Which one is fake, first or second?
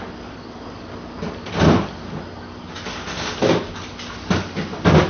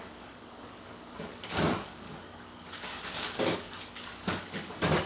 second